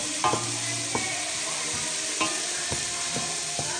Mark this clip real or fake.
real